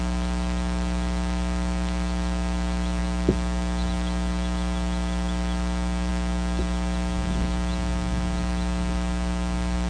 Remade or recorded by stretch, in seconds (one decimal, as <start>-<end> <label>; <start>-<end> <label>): 0.0-9.9 recorded